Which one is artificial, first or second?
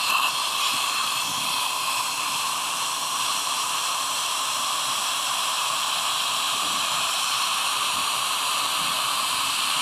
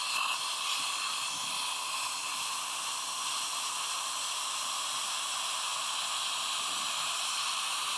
first